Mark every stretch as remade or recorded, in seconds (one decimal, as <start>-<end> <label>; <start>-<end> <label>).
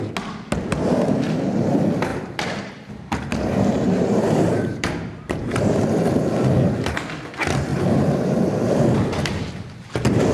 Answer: 0.0-2.1 recorded; 2.1-5.7 remade; 5.7-7.7 recorded; 7.7-8.4 remade; 8.4-10.3 recorded